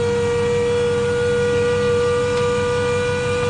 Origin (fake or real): real